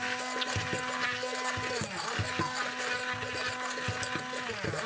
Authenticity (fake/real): real